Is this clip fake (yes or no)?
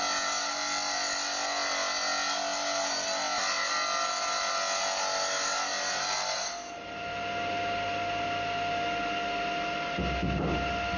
no